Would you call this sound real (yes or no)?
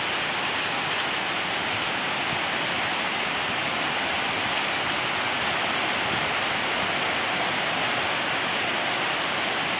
yes